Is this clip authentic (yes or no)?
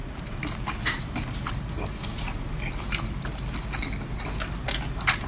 yes